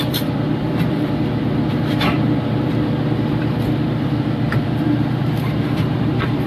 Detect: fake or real fake